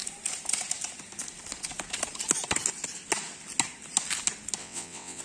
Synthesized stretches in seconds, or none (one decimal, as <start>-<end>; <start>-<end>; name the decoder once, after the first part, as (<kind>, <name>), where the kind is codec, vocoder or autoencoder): 4.6-5.2 (vocoder, WaveNeXt)

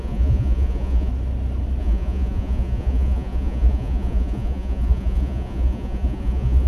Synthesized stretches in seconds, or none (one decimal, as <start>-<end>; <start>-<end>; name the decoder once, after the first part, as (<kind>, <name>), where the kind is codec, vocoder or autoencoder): 0.0-1.1 (vocoder, Vocos); 1.8-6.7

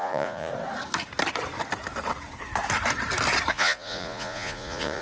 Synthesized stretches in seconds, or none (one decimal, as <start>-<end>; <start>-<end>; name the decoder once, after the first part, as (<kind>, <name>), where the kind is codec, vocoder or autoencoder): 0.0-0.5 (vocoder, Vocos); 3.5-5.0

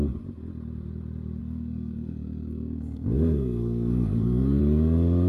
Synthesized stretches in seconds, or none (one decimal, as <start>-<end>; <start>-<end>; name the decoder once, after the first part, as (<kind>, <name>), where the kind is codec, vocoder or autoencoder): 1.4-4.6 (codec, SNAC)

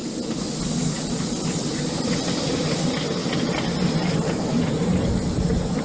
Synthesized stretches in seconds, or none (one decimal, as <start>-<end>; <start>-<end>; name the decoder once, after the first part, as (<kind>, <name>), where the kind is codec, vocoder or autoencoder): 1.1-3.2 (vocoder, BigVGAN v2)

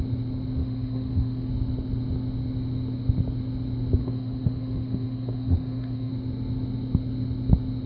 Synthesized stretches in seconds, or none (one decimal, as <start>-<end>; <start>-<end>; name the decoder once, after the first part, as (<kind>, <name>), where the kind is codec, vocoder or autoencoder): 0.6-1.5 (autoencoder, DAC-VAE); 4.0-6.1

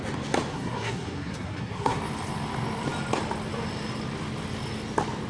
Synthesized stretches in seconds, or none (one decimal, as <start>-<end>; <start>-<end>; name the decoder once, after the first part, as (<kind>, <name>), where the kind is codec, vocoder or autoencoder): 0.5-2.0 (codec, SNAC)

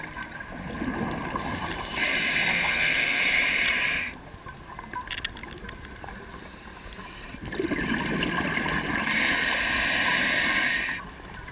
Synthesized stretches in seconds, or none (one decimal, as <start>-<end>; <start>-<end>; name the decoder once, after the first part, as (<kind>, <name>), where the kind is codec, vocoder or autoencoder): 2.5-3.2 (codec, SNAC)